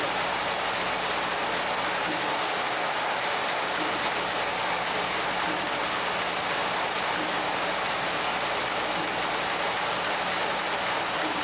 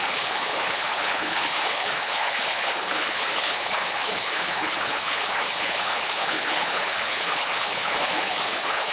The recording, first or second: first